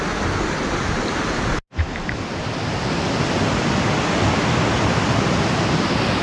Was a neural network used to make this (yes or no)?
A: no